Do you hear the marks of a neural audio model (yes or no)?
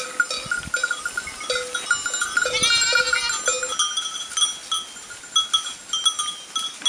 no